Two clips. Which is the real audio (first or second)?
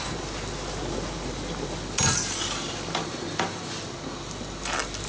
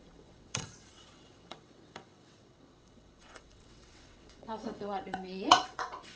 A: first